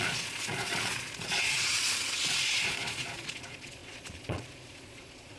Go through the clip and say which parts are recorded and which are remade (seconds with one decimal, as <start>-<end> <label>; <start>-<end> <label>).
0.0-5.4 remade